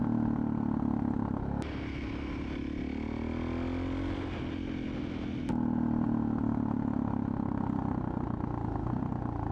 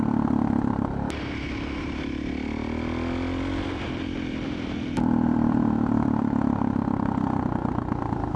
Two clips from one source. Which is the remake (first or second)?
second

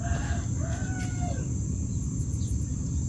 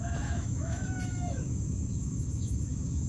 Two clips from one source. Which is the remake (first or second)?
second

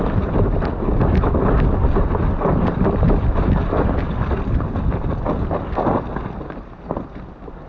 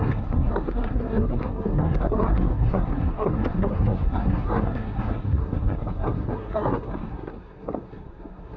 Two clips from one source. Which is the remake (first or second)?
second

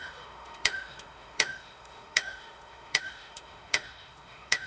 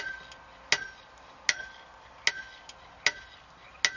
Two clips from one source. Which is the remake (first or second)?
first